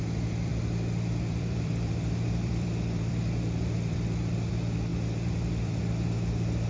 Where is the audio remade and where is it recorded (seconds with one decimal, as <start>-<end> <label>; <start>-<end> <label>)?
0.0-0.5 recorded; 0.5-4.5 remade; 4.5-4.9 recorded; 4.9-5.8 remade; 5.8-6.7 recorded